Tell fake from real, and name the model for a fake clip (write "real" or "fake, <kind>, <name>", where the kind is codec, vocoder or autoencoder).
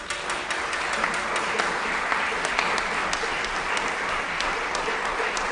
real